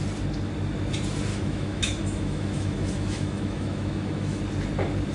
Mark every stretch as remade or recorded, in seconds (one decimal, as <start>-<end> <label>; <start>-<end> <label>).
0.0-1.3 recorded; 1.3-4.4 remade; 4.4-5.1 recorded